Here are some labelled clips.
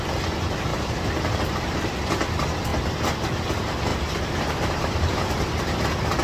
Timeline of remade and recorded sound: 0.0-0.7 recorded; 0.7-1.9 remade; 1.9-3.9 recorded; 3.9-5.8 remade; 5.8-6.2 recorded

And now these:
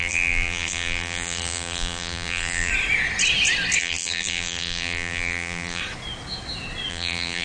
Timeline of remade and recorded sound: 0.0-2.7 remade; 2.7-3.8 recorded; 3.8-5.8 remade; 5.8-6.9 recorded; 6.9-7.4 remade

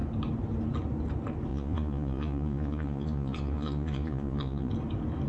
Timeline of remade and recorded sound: 0.0-1.5 recorded; 1.5-4.7 remade; 4.7-5.3 recorded

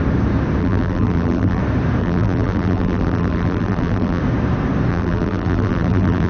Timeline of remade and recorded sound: 0.0-0.6 recorded; 0.6-1.6 remade; 1.6-2.0 recorded; 2.0-4.2 remade; 4.2-4.9 recorded; 4.9-6.3 remade

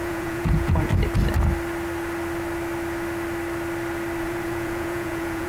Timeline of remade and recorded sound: 0.0-0.9 remade; 0.9-4.2 recorded; 4.2-5.5 remade

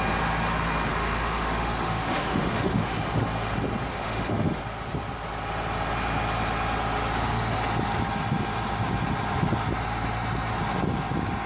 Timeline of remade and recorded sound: 0.0-0.9 recorded; 0.9-3.0 remade; 3.0-3.9 recorded; 3.9-4.6 remade; 4.6-11.5 recorded